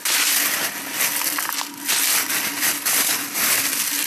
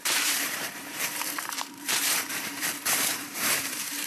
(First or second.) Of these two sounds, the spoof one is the second